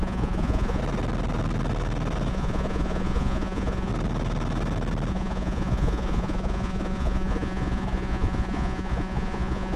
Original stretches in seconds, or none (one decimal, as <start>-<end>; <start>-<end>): 0.8-2.3; 3.9-5.1